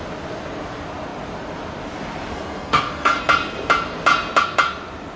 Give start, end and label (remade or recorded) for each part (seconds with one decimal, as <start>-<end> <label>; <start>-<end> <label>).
0.0-2.3 recorded; 2.3-3.2 remade; 3.2-5.2 recorded